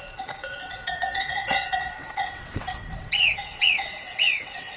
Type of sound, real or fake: fake